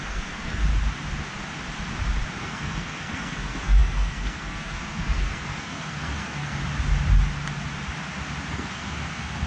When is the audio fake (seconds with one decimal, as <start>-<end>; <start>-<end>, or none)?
0.0-0.7; 2.4-6.6; 8.5-9.5